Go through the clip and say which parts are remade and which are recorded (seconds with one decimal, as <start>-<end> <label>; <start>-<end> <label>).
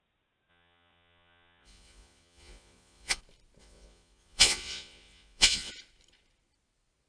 0.0-0.5 recorded; 0.5-3.2 remade; 3.2-3.6 recorded; 3.6-5.7 remade; 5.7-7.1 recorded